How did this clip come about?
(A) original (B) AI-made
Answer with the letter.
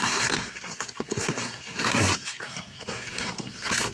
B